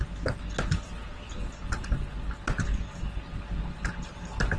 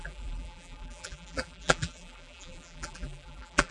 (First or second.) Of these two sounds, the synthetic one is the second